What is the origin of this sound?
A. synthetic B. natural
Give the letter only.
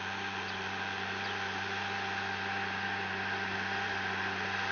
B